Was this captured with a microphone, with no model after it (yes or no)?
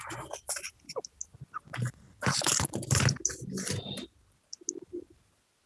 yes